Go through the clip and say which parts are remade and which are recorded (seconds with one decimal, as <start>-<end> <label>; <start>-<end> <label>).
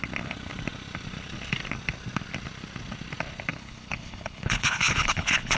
0.0-3.5 recorded; 3.5-5.6 remade